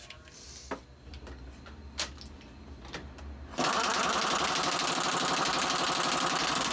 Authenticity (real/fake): real